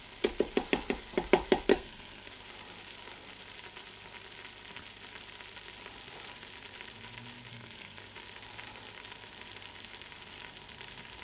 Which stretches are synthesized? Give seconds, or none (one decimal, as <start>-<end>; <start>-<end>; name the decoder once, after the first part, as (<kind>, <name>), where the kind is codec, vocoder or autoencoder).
1.7-2.3 (codec, SNAC); 7.5-8.0